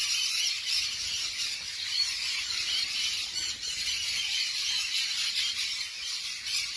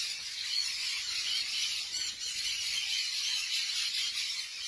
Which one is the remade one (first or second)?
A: second